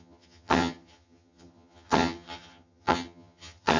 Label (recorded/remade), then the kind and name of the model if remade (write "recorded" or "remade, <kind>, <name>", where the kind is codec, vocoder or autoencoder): remade, vocoder, HiFi-GAN